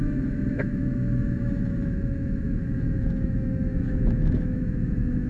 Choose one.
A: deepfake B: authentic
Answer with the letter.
A